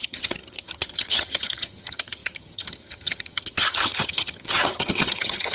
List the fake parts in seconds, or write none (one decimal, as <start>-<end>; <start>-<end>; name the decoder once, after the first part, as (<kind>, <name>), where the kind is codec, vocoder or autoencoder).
0.0-5.5 (vocoder, HiFi-GAN)